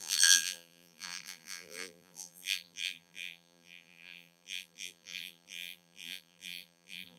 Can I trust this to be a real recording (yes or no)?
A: no